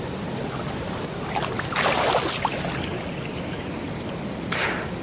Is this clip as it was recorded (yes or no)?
no